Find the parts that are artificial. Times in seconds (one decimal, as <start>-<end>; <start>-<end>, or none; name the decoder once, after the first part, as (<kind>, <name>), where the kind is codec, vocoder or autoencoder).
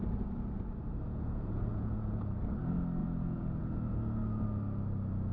1.0-2.2 (vocoder, Vocos); 3.0-3.6